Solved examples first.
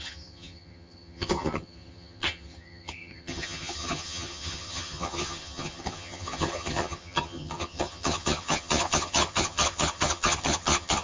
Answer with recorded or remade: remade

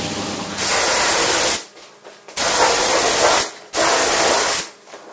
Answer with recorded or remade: recorded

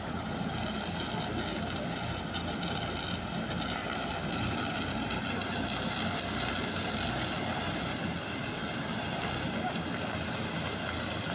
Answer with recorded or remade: recorded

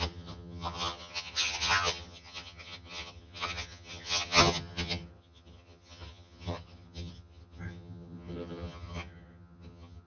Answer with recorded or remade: remade